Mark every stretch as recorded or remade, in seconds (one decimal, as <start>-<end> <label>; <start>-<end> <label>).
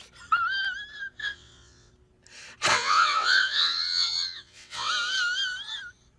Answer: 0.0-1.2 recorded; 1.2-1.9 remade; 1.9-2.7 recorded; 2.7-4.9 remade; 4.9-6.2 recorded